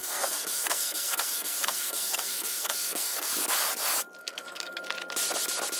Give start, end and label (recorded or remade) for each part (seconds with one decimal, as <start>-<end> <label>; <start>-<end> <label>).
0.0-3.3 remade; 3.3-4.2 recorded; 4.2-4.8 remade; 4.8-5.8 recorded